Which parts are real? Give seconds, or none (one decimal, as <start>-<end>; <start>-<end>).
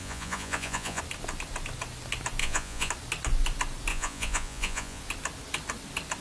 1.0-2.4; 2.9-3.9; 5.0-6.2